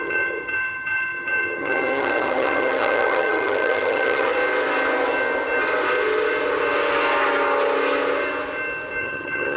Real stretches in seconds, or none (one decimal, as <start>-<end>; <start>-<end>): 4.3-9.0